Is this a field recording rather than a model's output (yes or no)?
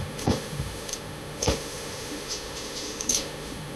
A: no